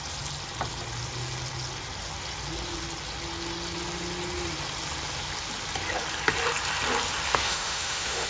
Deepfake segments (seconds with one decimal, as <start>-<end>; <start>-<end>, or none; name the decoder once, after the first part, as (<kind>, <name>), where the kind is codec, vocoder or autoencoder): 7.3-8.3 (autoencoder, DAC-VAE)